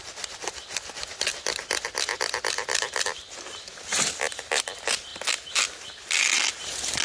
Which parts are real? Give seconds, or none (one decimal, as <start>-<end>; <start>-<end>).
0.0-7.0